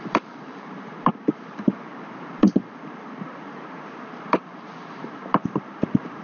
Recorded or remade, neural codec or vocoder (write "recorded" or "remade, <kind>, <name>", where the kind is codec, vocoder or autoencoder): remade, vocoder, BigVGAN v2